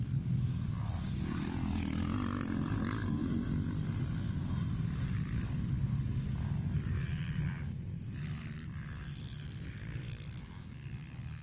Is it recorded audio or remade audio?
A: recorded